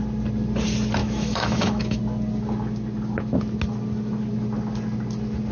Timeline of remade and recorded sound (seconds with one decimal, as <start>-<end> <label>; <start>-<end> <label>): 0.0-1.0 recorded; 1.0-2.0 remade; 2.0-5.5 recorded